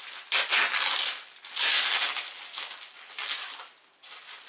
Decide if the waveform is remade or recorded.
recorded